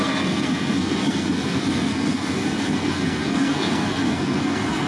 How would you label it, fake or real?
fake